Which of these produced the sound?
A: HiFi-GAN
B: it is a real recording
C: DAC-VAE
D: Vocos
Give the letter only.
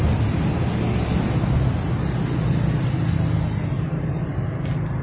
B